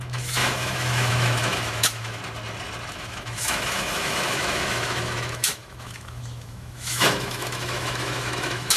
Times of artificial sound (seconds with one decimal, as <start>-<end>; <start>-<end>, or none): 0.0-2.2; 2.9-8.8

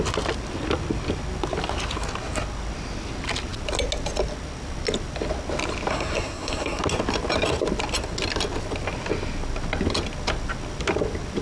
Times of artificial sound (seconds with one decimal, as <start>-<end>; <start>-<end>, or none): 5.9-6.8